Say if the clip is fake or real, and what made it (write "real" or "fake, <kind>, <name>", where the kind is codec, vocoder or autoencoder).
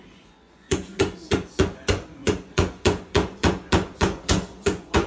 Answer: fake, vocoder, Vocos